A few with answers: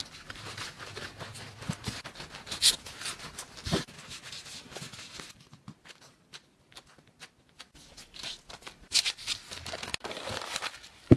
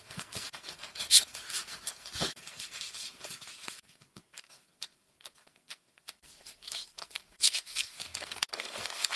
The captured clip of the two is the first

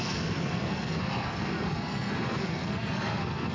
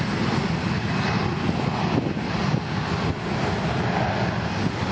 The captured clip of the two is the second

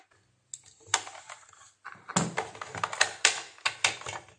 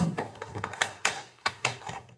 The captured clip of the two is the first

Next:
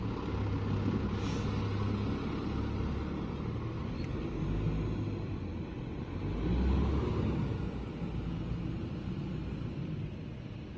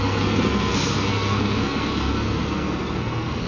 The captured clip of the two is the first